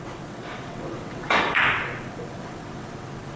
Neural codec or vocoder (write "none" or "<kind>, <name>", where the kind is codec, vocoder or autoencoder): vocoder, WaveNeXt